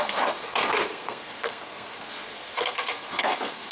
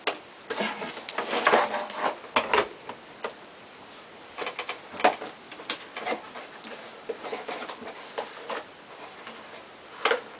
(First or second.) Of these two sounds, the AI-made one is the first